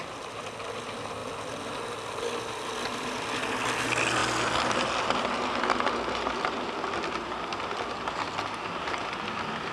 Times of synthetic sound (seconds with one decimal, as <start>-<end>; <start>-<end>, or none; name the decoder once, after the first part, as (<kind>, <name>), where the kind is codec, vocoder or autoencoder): none